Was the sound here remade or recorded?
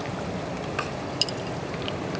recorded